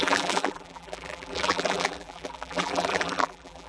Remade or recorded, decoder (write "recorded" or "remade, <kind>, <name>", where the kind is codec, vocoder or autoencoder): remade, vocoder, BigVGAN v2